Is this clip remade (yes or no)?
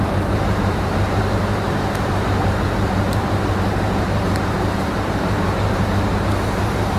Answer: yes